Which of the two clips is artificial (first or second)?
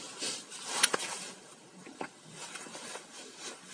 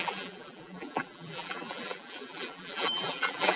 second